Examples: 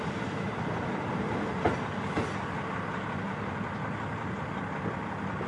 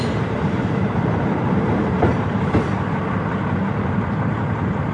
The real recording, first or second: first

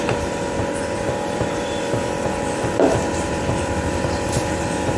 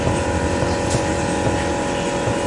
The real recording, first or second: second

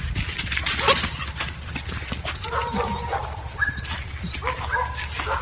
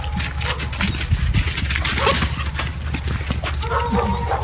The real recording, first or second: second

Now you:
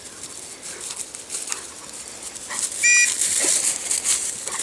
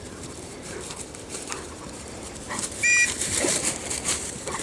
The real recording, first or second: first